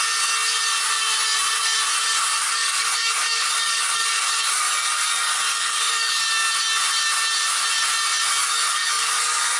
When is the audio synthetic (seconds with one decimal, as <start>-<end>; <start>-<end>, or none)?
2.3-6.2; 8.4-9.6